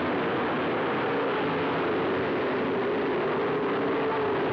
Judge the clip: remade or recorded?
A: recorded